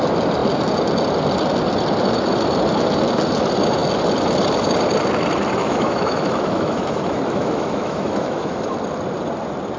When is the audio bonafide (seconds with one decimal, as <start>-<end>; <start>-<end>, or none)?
0.0-5.6; 8.6-9.8